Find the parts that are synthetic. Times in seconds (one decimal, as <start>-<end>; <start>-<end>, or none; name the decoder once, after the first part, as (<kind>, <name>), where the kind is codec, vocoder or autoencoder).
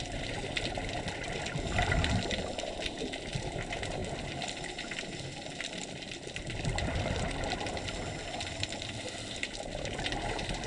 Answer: none